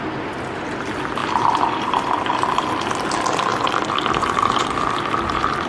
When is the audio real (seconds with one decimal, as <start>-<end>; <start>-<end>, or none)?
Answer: 0.0-1.2; 2.1-3.5; 4.1-5.7